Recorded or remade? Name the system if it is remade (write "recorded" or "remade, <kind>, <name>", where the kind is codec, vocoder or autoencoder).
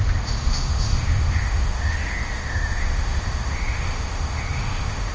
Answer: remade, autoencoder, DAC-VAE